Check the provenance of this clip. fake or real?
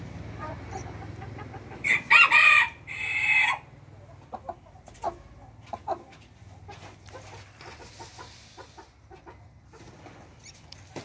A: real